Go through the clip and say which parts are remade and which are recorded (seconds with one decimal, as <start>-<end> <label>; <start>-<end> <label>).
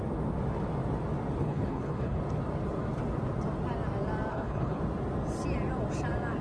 0.0-1.4 recorded; 1.4-2.2 remade; 2.2-4.3 recorded; 4.3-4.8 remade; 4.8-6.4 recorded